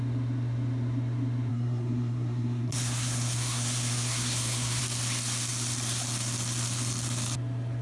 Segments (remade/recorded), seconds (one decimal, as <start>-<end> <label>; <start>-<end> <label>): 0.0-1.5 recorded; 1.5-4.8 remade; 4.8-7.8 recorded